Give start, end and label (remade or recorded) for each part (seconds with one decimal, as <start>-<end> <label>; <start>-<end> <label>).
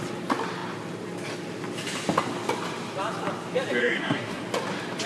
0.0-3.8 recorded; 3.8-4.4 remade; 4.4-5.1 recorded